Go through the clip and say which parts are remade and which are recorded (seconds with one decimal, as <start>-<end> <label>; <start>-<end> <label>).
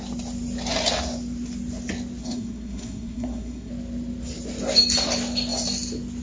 0.0-2.2 recorded; 2.2-3.7 remade; 3.7-6.2 recorded